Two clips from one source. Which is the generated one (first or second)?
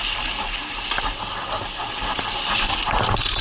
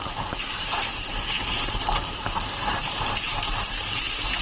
second